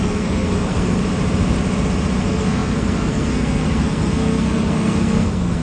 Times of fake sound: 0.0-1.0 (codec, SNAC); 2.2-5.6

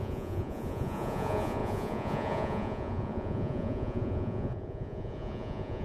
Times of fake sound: 0.0-5.8 (vocoder, Vocos)

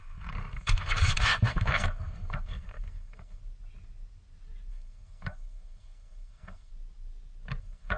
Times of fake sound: 0.0-3.4 (codec, SNAC); 4.7-6.7; 7.6-8.0